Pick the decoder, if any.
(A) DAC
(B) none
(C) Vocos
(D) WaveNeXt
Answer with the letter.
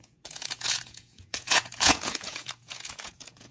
C